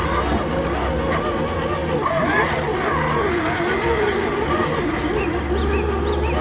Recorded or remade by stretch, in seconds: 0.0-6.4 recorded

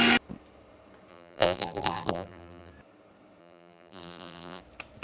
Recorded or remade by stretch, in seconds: 0.0-1.1 recorded; 1.1-2.7 remade; 2.7-3.4 recorded; 3.4-4.6 remade; 4.6-5.0 recorded

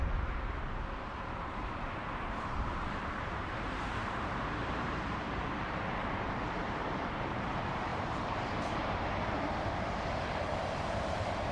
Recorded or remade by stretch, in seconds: 0.0-11.5 remade

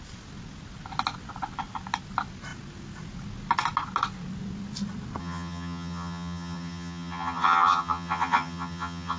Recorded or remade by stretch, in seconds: 0.0-5.2 recorded; 5.2-9.2 remade